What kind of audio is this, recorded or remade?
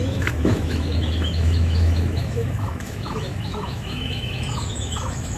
remade